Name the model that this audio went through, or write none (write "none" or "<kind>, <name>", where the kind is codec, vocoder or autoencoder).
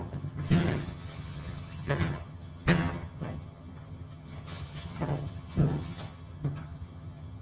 vocoder, HiFi-GAN